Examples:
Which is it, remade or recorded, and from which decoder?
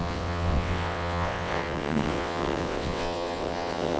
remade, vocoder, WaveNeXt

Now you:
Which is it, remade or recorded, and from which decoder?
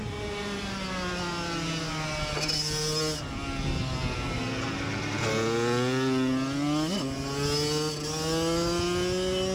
recorded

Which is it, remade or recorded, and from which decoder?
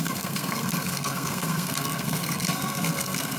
remade, codec, SNAC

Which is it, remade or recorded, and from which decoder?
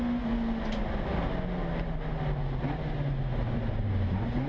recorded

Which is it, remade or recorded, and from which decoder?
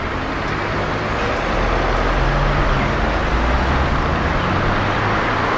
recorded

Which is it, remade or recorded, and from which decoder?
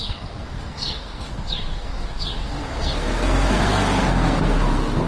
remade, codec, SNAC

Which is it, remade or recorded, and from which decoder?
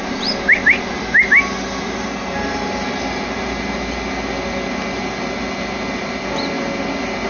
recorded